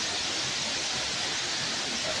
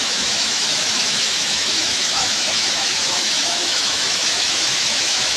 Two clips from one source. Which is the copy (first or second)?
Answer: second